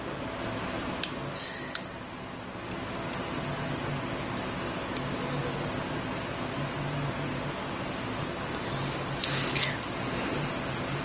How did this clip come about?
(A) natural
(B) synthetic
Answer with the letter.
A